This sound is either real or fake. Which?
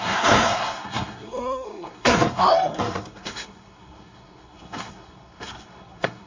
fake